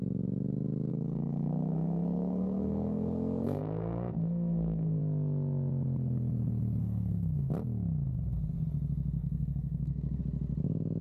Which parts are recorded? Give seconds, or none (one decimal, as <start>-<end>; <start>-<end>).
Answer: 0.0-0.9; 5.0-6.8; 7.5-9.2; 10.2-11.0